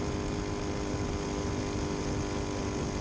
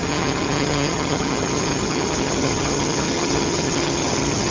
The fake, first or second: second